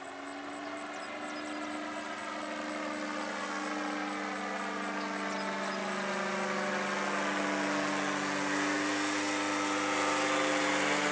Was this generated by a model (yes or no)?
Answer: no